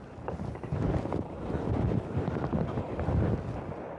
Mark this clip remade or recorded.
recorded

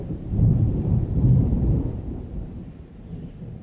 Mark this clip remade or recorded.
remade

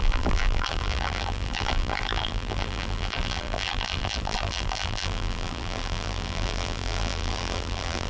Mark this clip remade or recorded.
remade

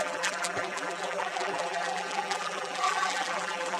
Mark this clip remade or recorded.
remade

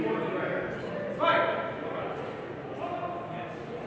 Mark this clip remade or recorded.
recorded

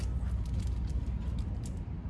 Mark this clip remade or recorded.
recorded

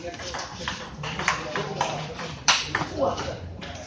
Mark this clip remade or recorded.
remade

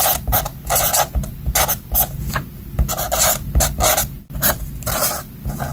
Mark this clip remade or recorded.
recorded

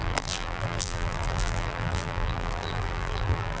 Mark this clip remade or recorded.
remade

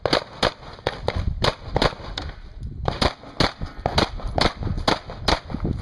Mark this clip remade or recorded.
recorded